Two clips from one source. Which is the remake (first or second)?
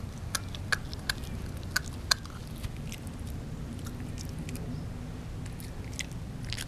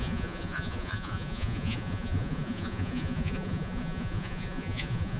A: second